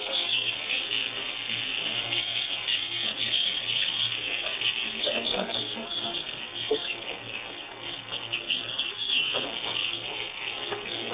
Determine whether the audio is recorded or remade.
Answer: remade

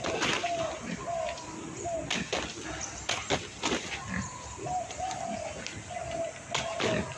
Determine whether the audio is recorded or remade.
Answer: recorded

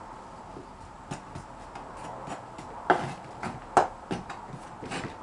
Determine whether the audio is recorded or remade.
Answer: recorded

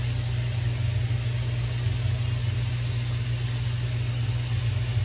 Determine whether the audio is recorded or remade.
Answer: recorded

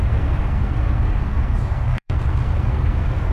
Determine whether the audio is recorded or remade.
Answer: remade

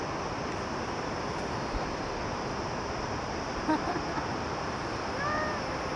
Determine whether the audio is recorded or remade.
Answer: recorded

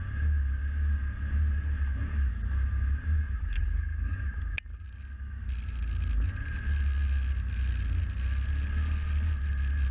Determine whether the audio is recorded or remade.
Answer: recorded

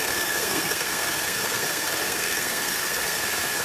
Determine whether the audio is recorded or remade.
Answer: remade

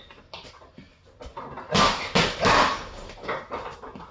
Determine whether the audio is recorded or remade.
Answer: recorded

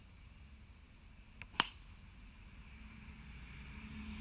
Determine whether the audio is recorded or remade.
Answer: recorded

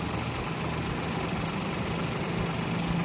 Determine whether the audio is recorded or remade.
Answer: recorded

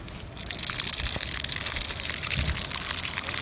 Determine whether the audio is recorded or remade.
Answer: recorded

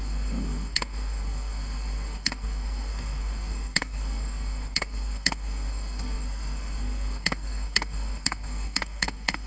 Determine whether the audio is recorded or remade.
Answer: remade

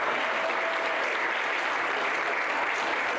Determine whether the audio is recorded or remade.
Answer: recorded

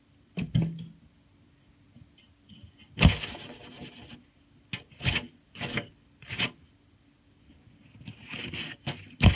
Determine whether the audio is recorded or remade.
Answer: recorded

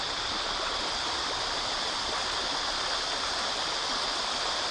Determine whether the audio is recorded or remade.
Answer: recorded